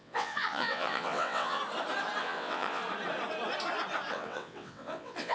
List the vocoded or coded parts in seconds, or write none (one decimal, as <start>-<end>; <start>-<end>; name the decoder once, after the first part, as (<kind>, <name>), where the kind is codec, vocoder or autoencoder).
0.0-1.6 (vocoder, WaveNeXt); 2.2-2.8; 4.1-5.3